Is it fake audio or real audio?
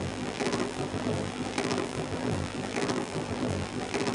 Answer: fake